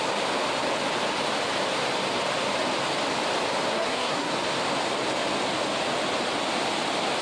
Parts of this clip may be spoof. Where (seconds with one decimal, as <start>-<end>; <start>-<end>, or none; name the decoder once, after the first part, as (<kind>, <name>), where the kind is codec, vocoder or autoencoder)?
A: 3.7-4.3 (codec, SNAC)